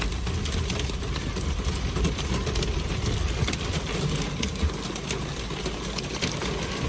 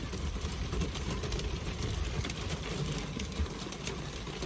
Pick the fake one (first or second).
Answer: second